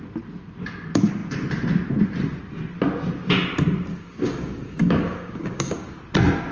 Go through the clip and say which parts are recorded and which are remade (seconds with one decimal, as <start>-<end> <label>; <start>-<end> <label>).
0.0-3.9 recorded; 3.9-6.0 remade; 6.0-6.5 recorded